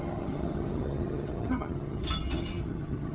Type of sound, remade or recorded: remade